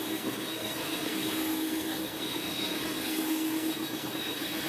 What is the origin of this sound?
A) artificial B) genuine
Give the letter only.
A